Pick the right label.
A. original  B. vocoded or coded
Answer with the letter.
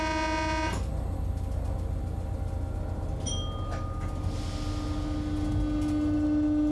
A